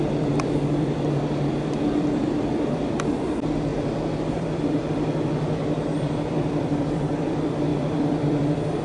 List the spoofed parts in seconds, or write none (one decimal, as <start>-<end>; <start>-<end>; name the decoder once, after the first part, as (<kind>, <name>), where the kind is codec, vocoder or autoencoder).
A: 0.0-8.8 (vocoder, BigVGAN v2)